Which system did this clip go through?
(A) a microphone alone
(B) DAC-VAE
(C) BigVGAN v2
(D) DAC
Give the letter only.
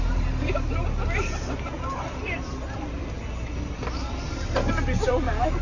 C